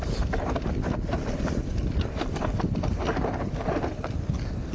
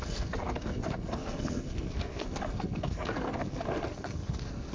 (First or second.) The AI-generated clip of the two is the second